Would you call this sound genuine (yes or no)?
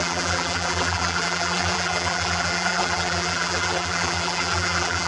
no